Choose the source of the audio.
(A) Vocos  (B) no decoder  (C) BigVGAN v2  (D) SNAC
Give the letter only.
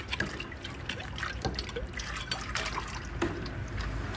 B